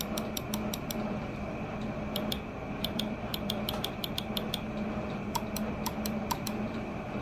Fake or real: fake